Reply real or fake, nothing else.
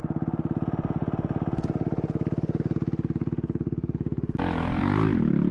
real